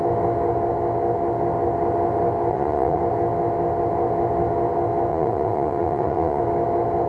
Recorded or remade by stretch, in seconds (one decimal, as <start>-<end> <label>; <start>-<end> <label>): 0.0-2.5 recorded; 2.5-3.0 remade; 3.0-5.1 recorded; 5.1-6.4 remade; 6.4-7.1 recorded